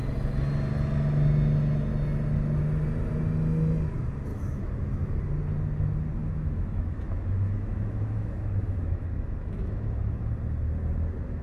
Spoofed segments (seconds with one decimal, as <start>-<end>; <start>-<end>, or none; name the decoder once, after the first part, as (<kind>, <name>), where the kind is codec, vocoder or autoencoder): 4.3-5.3 (autoencoder, DAC-VAE); 6.2-10.3